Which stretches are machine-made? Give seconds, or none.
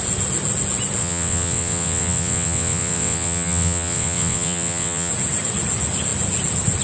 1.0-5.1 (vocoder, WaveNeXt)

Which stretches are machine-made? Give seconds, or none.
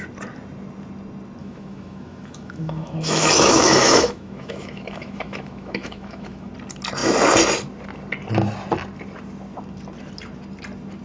1.4-6.5 (autoencoder, DAC-VAE)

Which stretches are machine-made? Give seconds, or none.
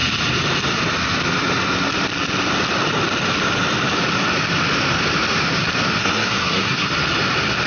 6.0-6.9 (codec, SNAC)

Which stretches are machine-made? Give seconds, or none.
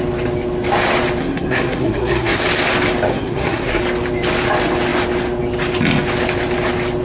1.2-2.4 (codec, SNAC); 3.1-3.8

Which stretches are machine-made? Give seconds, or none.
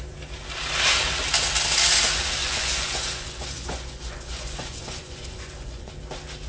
2.4-5.9 (vocoder, Vocos)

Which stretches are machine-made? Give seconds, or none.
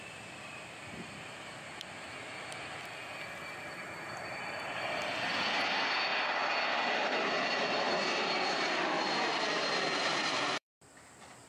0.0-6.1 (vocoder, BigVGAN v2); 7.2-11.5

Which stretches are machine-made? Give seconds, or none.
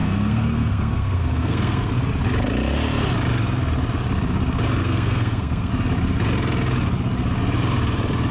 0.0-1.9 (codec, SNAC); 4.8-5.7